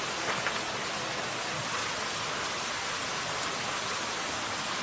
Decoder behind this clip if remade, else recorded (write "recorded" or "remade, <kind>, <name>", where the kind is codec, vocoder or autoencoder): recorded